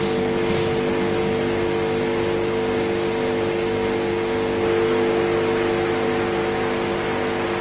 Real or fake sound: real